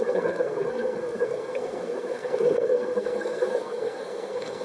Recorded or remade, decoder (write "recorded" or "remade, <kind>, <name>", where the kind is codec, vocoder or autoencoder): remade, codec, SNAC